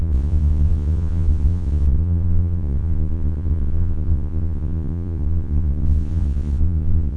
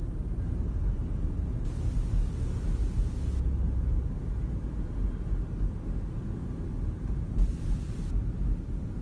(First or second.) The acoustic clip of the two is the second